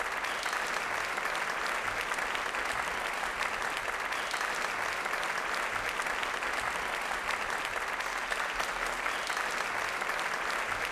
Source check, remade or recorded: recorded